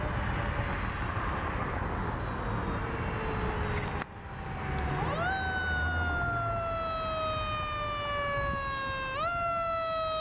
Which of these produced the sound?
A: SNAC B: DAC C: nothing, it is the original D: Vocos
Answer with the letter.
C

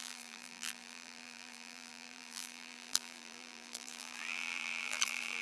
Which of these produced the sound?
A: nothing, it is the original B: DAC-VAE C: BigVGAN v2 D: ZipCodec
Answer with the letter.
C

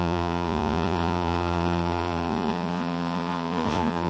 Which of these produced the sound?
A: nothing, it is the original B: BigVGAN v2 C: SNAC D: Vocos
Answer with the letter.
D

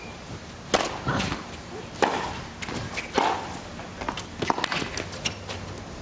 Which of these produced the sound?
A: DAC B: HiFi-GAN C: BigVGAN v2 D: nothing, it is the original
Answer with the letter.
D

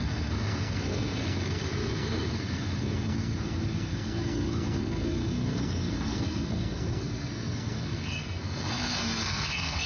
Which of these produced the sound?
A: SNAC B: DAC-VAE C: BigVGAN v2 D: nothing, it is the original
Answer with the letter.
A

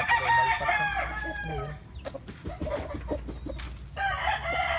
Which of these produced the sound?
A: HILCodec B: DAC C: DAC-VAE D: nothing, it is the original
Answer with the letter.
D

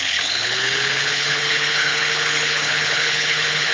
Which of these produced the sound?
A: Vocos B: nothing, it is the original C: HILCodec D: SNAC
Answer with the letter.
C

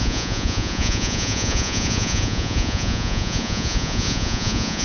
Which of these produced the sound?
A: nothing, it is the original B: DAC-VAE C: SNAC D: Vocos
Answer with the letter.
D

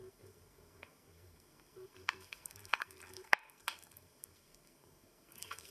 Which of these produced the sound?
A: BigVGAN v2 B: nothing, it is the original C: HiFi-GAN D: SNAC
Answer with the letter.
D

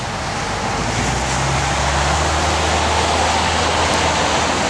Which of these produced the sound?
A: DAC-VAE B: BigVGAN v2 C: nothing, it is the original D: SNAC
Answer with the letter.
C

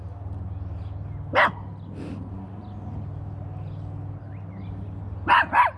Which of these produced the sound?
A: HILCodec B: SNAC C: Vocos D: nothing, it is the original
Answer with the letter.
D